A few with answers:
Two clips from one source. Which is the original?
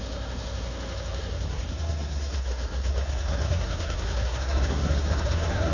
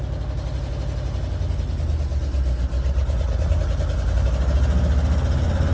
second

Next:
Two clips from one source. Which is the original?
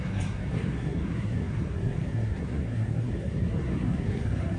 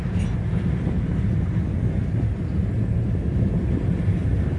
second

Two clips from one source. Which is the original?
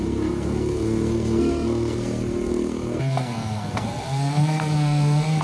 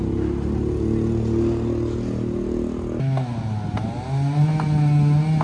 second